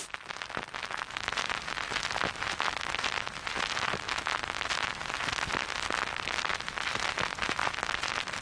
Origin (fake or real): real